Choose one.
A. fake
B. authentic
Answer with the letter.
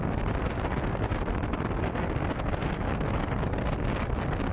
B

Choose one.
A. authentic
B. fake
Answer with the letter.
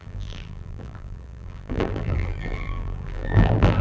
B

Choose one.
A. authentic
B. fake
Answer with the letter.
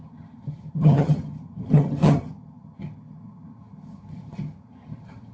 B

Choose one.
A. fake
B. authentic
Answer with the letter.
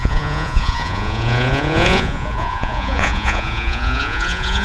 A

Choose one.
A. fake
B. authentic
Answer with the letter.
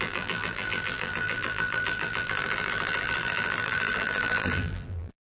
A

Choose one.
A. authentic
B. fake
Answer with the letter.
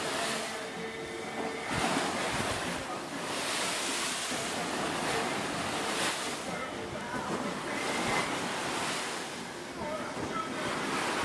A